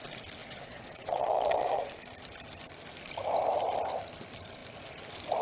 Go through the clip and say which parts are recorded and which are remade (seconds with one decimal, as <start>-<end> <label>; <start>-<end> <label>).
0.0-0.4 recorded; 0.4-1.9 remade; 1.9-5.4 recorded